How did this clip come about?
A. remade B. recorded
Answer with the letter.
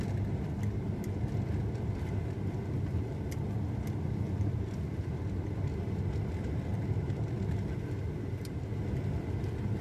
B